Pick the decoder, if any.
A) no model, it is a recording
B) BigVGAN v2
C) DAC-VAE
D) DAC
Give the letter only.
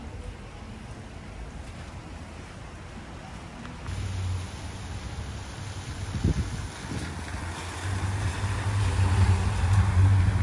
A